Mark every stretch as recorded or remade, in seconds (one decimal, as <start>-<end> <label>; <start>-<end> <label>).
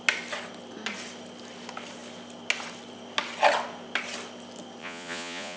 0.0-4.8 recorded; 4.8-5.6 remade